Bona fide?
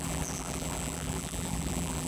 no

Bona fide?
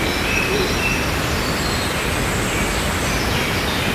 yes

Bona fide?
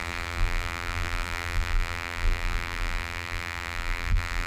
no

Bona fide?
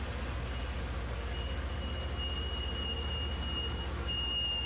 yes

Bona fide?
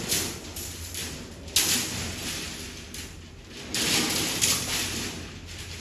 yes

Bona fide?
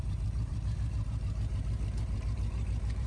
no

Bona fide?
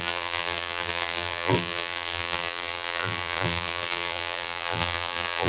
no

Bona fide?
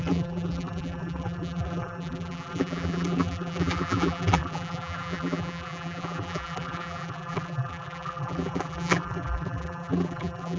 no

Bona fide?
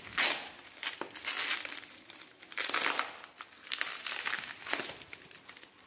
no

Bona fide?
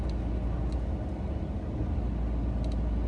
yes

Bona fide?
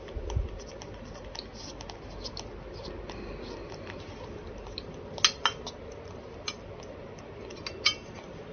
yes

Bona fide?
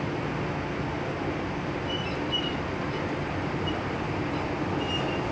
yes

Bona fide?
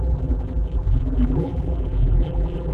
no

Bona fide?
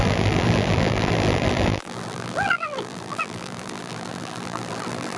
no